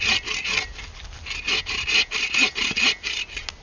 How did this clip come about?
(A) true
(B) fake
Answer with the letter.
A